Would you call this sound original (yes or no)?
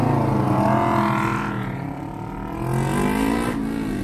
yes